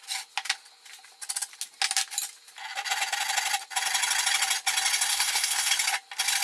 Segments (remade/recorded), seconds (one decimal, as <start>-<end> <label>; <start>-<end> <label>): 0.0-5.1 recorded; 5.1-5.7 remade; 5.7-6.4 recorded